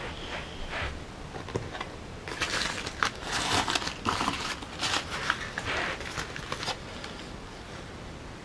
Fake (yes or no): no